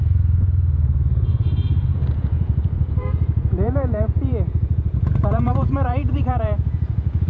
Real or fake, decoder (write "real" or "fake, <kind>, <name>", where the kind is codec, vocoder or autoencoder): fake, vocoder, Vocos